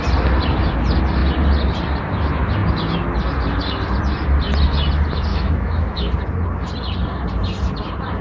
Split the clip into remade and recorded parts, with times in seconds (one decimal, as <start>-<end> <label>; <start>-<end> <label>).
0.0-5.3 recorded; 5.3-6.1 remade; 6.1-8.2 recorded

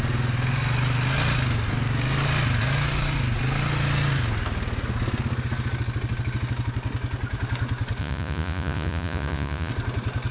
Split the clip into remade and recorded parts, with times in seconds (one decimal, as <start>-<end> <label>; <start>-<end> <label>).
0.0-8.0 recorded; 8.0-9.7 remade; 9.7-10.3 recorded